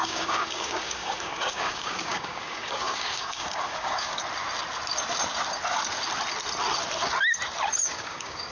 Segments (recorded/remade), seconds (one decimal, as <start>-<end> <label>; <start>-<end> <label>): 0.0-4.2 remade; 4.2-7.8 recorded; 7.8-8.5 remade